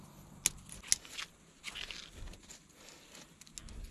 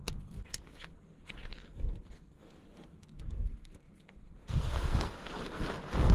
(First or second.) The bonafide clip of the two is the first